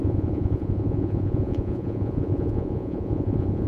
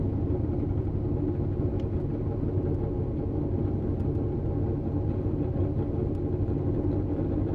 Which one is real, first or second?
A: second